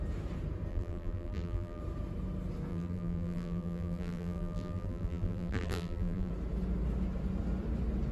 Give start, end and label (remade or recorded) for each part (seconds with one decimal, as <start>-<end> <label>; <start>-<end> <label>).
0.0-0.7 recorded; 0.7-1.8 remade; 1.8-2.7 recorded; 2.7-6.3 remade; 6.3-8.1 recorded